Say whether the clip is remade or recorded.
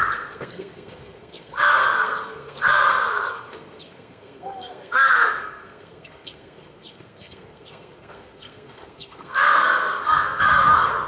remade